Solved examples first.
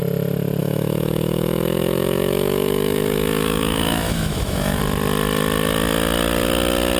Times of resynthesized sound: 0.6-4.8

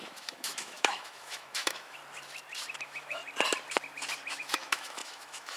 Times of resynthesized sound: 0.0-2.0; 2.8-3.2; 4.3-5.6

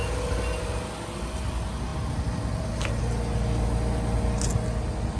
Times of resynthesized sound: none

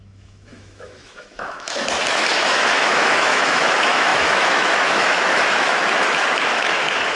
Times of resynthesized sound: 0.0-7.2

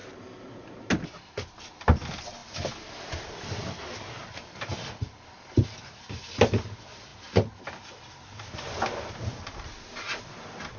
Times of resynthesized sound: none

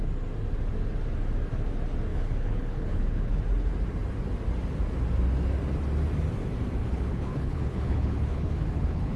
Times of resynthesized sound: 2.1-3.4; 6.8-9.2

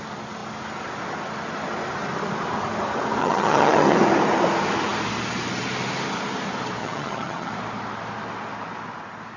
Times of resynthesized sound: 3.2-4.0; 6.8-7.5

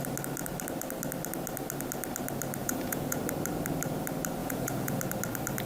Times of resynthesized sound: 2.6-3.2; 4.4-5.0